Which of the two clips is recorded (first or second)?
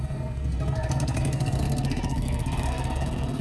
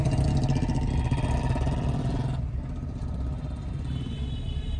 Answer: second